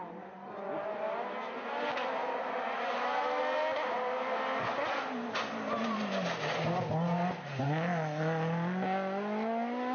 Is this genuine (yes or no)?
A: yes